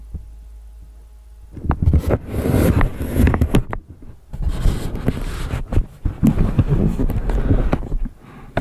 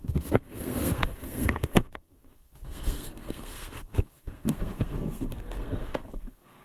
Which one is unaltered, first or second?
first